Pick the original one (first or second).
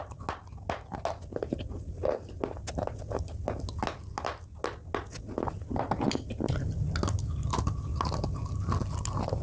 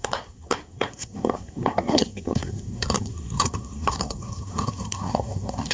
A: first